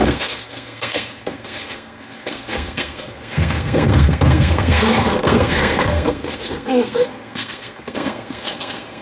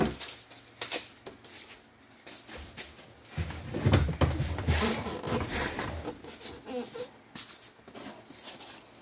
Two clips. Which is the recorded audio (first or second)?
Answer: second